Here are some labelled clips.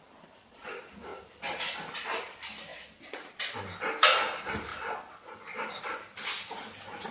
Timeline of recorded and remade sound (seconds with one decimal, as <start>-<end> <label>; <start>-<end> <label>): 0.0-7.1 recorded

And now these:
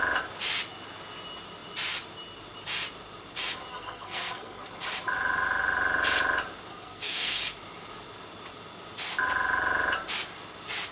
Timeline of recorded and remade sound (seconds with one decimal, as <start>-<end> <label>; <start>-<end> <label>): 0.0-3.7 recorded; 3.7-4.7 remade; 4.7-6.7 recorded; 6.7-7.4 remade; 7.4-10.9 recorded

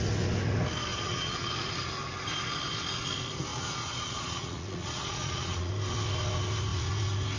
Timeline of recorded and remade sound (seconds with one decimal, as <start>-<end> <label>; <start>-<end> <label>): 0.0-0.9 recorded; 0.9-1.5 remade; 1.5-3.5 recorded; 3.5-5.7 remade; 5.7-7.4 recorded

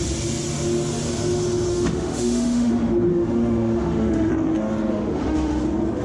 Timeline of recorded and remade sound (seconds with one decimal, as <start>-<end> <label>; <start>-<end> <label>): 0.0-1.7 recorded; 1.7-2.7 remade; 2.7-3.1 recorded; 3.1-4.3 remade; 4.3-4.9 recorded; 4.9-5.6 remade; 5.6-6.0 recorded